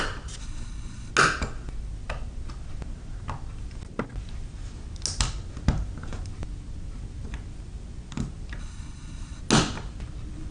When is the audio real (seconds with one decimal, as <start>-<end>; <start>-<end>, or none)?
0.0-0.4; 1.1-8.6; 9.4-10.5